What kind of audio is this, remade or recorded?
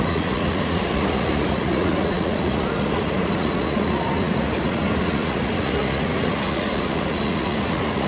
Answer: remade